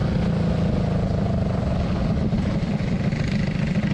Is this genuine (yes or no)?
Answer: yes